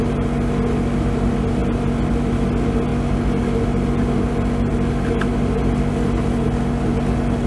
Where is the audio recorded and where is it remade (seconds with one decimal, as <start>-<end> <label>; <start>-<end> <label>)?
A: 0.0-7.5 recorded